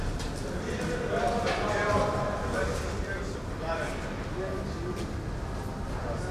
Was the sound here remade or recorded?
recorded